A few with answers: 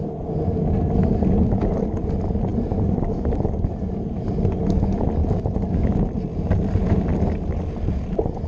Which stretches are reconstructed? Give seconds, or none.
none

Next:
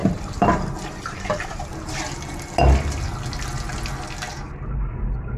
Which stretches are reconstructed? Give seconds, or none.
0.0-2.4 (vocoder, BigVGAN v2); 4.3-5.4

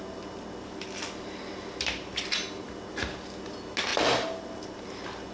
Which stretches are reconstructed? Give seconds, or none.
none